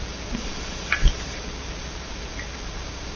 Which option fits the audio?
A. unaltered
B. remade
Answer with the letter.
B